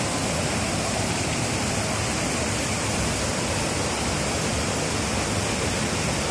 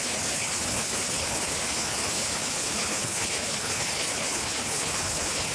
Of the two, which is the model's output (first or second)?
second